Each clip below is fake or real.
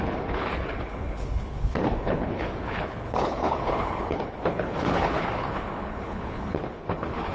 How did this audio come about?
fake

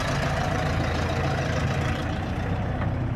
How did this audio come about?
fake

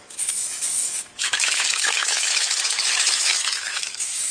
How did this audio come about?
fake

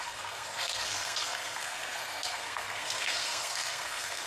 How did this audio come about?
fake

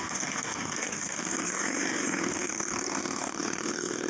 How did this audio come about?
fake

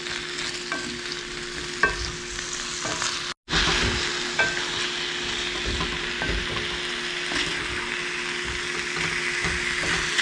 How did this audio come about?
real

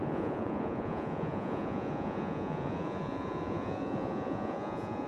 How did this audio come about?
fake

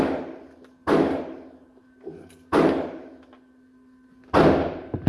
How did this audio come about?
real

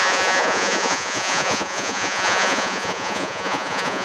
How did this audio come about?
fake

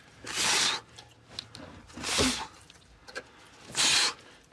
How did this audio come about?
real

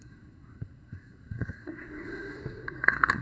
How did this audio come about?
fake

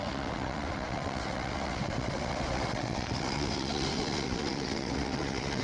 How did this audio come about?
fake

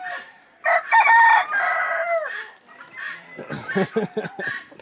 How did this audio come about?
real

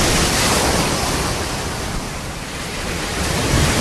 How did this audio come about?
real